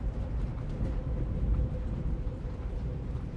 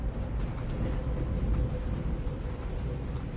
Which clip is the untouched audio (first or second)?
second